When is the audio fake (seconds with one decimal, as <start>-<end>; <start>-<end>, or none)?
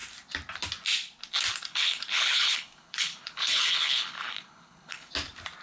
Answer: 1.7-5.1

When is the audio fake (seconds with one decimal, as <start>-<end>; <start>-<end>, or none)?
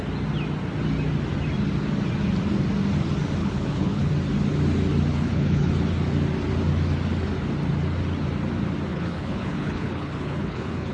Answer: 3.4-4.1; 5.1-5.7; 8.9-10.9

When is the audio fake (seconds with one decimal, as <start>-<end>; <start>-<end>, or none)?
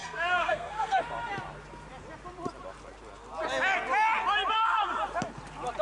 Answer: 0.0-1.0; 4.5-4.9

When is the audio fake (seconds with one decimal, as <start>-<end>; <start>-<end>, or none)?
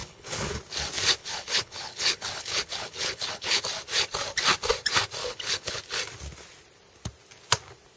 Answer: 0.0-0.6; 1.2-3.6; 5.2-5.8